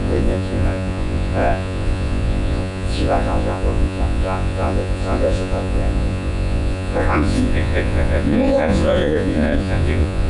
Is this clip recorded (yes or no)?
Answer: no